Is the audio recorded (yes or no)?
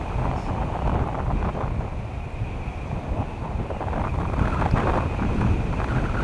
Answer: yes